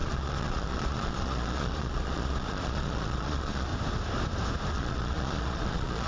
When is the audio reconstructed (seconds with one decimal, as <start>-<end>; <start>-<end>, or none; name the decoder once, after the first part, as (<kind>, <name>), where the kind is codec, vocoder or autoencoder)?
0.0-3.7 (vocoder, Vocos); 4.7-6.1